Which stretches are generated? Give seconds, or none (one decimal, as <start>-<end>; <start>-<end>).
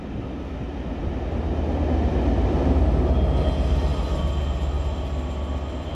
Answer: none